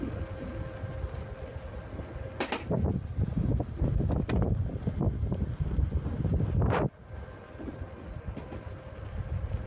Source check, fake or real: real